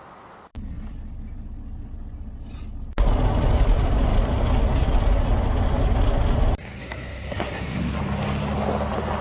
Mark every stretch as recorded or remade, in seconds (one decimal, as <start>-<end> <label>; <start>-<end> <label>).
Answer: 0.0-6.8 recorded; 6.8-8.0 remade; 8.0-9.2 recorded